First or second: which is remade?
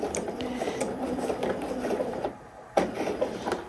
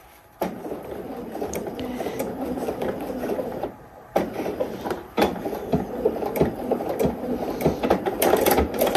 second